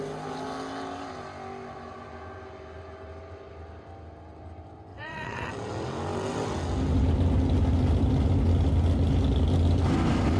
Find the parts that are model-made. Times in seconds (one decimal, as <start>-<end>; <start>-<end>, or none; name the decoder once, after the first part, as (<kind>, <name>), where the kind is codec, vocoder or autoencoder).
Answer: 4.9-5.5 (vocoder, WaveNeXt)